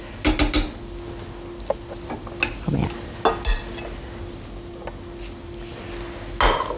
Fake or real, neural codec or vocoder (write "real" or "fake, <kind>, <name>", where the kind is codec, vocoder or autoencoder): real